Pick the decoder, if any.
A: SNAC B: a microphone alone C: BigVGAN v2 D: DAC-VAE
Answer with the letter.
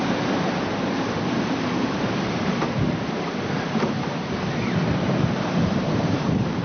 C